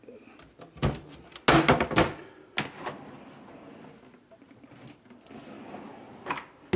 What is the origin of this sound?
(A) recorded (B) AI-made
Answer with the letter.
A